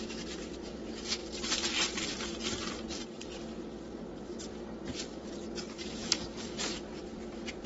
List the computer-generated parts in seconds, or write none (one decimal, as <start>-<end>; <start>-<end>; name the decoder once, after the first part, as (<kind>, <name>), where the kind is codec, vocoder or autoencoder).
6.0-6.7 (codec, DAC)